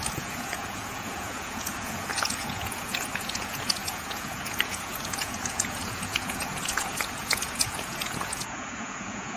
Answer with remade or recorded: remade